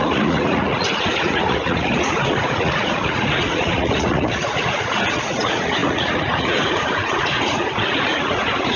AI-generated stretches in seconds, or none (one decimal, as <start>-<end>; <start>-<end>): 0.0-8.8